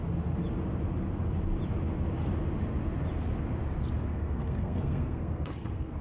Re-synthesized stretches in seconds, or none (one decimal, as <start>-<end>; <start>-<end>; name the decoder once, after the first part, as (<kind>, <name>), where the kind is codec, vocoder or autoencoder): 4.1-6.0 (codec, SNAC)

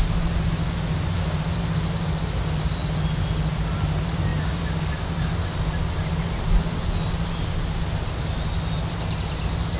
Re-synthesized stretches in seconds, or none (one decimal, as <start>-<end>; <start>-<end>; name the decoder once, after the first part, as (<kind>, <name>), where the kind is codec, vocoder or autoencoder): none

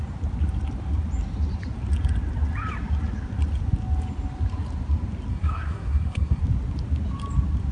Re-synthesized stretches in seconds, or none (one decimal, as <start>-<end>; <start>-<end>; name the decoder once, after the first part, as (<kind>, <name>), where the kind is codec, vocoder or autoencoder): 5.3-6.4 (codec, SNAC)

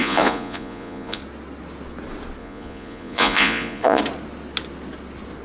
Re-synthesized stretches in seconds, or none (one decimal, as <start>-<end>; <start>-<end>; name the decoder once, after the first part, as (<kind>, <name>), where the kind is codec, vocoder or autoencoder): 0.0-1.2 (vocoder, Vocos); 2.4-4.0